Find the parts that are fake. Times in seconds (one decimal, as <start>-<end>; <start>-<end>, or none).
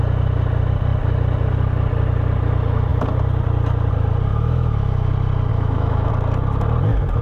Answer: 4.3-5.1; 5.5-6.1